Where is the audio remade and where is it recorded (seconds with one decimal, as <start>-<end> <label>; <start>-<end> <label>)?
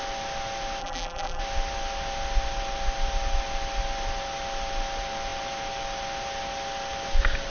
0.0-0.8 recorded; 0.8-1.4 remade; 1.4-7.5 recorded